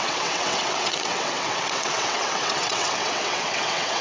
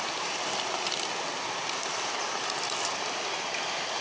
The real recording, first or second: second